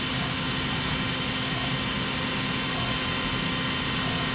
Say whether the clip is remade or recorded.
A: recorded